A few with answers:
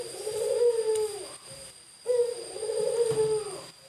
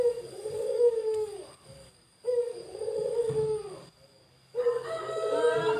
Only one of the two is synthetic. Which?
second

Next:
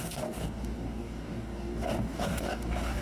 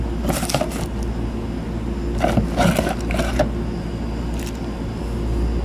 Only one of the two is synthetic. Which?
first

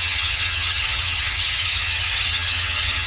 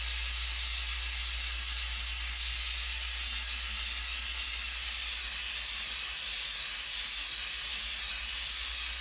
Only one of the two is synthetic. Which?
first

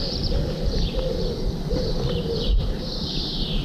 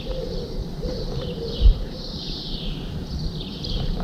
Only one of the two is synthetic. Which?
second